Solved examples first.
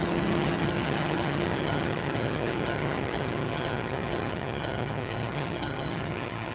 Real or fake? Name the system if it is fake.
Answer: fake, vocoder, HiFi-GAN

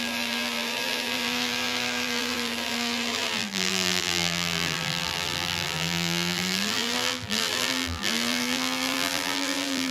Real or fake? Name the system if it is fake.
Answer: fake, vocoder, BigVGAN v2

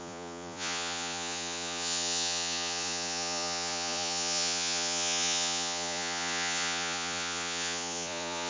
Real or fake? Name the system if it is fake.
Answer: fake, vocoder, Vocos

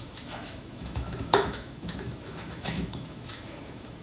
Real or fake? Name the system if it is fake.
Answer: fake, autoencoder, DAC-VAE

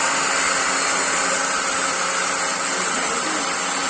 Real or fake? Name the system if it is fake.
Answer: real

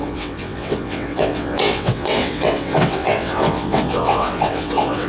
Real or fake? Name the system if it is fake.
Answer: fake, vocoder, WaveNeXt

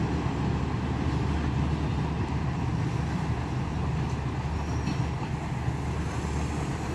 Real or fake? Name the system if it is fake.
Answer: real